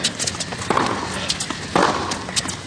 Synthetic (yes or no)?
no